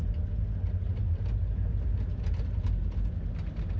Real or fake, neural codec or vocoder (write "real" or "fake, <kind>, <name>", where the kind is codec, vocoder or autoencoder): real